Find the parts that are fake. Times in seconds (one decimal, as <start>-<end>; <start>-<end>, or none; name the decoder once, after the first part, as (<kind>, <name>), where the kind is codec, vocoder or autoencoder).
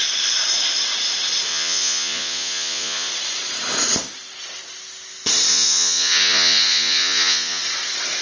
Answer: 1.5-3.1 (vocoder, Vocos); 5.5-7.6